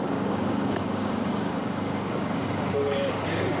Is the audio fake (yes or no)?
yes